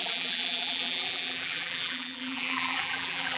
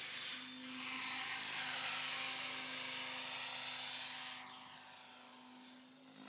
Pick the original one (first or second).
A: second